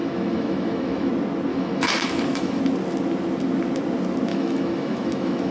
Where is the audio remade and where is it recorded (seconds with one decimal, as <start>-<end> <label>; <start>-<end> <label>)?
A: 0.0-1.1 remade; 1.1-1.5 recorded; 1.5-2.6 remade; 2.6-4.3 recorded; 4.3-5.5 remade